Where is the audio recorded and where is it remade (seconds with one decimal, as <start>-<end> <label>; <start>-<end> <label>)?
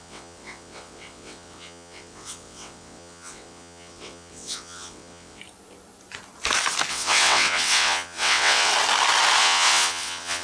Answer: 0.0-5.4 remade; 5.4-6.9 recorded; 6.9-8.7 remade; 8.7-9.4 recorded; 9.4-10.4 remade